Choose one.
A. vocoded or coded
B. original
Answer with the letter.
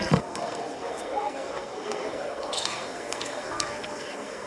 A